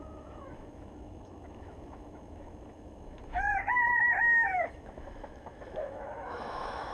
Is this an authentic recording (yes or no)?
no